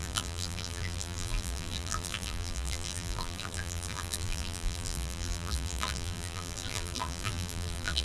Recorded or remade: remade